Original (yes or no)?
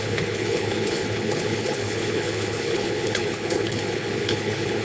no